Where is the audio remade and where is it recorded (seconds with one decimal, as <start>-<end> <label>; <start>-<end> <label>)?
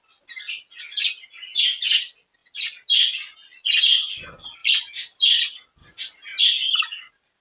0.0-4.6 recorded; 4.6-5.2 remade; 5.2-5.8 recorded; 5.8-6.4 remade; 6.4-7.4 recorded